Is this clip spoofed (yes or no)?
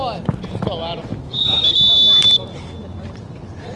no